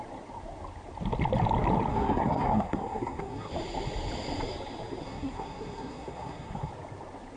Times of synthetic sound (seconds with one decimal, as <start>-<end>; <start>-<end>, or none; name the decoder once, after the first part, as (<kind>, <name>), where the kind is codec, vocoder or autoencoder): 1.9-3.5 (codec, SNAC); 5.0-6.7